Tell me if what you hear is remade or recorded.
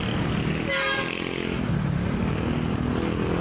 recorded